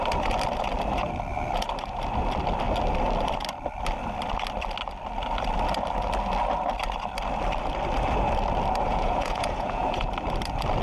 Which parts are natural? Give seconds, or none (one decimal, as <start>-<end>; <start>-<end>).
0.0-8.9; 10.1-10.8